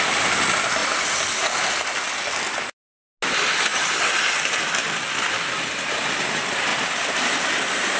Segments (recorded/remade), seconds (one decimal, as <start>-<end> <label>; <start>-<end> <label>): 0.0-8.0 recorded